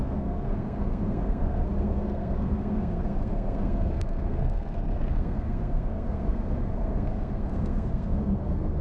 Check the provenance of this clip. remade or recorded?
remade